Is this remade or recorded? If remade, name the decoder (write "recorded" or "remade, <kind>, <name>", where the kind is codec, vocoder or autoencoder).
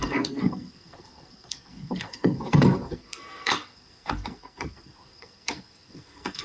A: remade, codec, SNAC